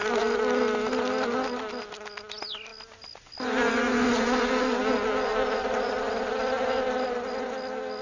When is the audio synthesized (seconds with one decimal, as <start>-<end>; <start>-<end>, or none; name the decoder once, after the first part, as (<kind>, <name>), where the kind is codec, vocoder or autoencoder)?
none